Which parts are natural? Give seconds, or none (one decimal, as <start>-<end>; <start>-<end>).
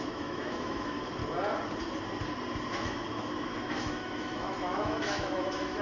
1.2-2.7